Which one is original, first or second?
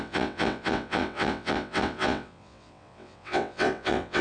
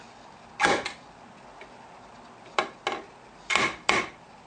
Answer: second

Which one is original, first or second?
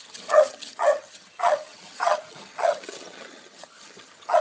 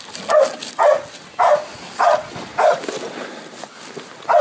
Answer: second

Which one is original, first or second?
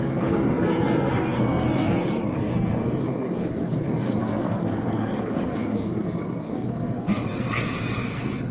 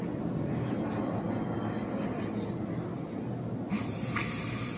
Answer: second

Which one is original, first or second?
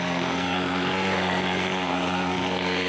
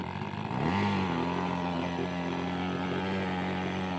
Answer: second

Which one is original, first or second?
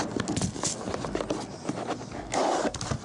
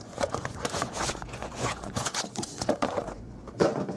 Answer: first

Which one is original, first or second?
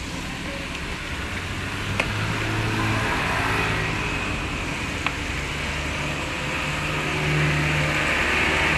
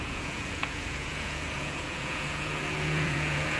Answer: first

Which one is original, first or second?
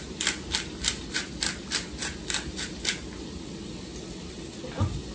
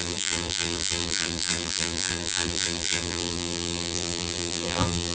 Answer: first